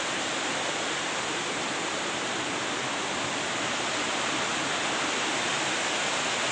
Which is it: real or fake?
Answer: real